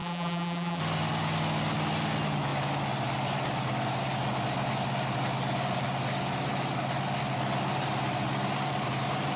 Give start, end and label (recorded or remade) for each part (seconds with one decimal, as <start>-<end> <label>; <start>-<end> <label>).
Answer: 0.0-0.8 remade; 0.8-9.4 recorded